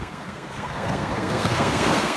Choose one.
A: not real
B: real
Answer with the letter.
A